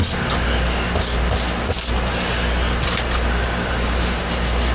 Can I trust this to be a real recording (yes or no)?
yes